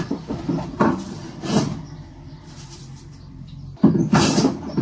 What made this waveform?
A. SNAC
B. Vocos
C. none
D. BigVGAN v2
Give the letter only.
D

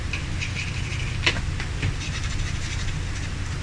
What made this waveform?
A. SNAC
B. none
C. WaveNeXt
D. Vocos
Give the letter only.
B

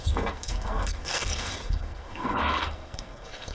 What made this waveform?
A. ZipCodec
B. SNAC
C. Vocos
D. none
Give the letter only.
B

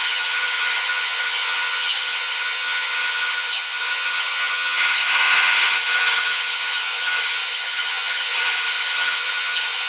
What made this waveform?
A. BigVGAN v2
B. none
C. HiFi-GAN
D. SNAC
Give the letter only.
C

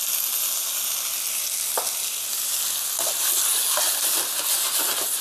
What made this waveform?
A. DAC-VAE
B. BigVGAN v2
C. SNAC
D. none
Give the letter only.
D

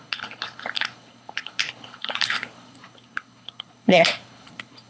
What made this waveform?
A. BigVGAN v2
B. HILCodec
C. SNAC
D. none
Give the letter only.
B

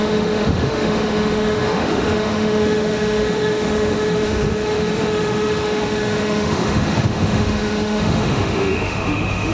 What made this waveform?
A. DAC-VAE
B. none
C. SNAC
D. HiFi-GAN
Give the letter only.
A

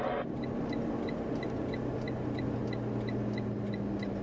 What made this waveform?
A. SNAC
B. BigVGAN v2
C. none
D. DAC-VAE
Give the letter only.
C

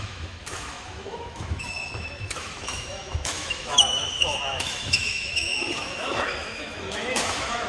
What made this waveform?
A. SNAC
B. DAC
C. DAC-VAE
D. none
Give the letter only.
C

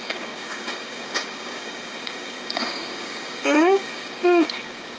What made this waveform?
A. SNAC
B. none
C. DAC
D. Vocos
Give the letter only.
C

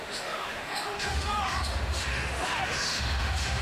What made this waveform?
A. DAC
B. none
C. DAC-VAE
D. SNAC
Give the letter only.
C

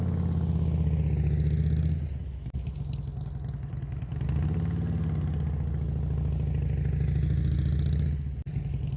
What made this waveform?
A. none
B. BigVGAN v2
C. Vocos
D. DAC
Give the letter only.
A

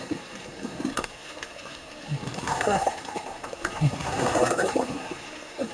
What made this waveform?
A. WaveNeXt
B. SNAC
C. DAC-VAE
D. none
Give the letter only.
B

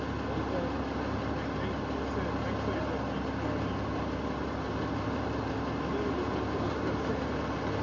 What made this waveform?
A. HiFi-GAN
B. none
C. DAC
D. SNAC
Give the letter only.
B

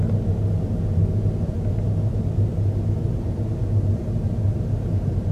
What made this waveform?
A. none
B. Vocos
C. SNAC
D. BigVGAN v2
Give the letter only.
A